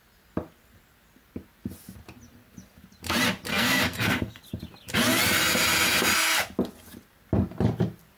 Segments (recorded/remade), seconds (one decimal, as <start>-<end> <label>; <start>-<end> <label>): 0.0-3.5 recorded; 3.5-4.4 remade; 4.4-8.2 recorded